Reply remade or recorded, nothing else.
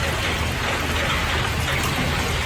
recorded